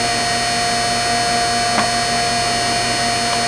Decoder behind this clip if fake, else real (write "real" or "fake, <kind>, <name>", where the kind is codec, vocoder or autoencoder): real